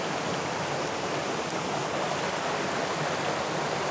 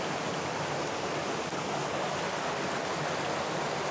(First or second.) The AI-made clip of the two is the first